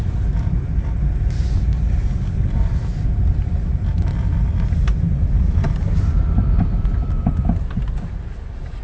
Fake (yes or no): no